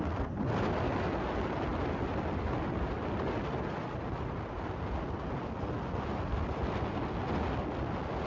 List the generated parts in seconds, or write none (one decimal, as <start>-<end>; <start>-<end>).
none